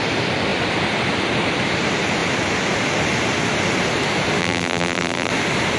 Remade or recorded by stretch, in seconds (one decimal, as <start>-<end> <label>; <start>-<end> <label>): 0.0-4.4 recorded; 4.4-5.3 remade; 5.3-5.8 recorded